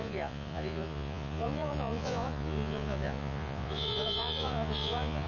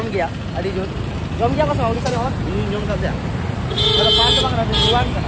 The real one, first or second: second